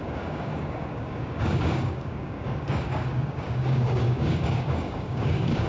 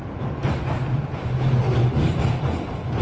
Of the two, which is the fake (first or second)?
first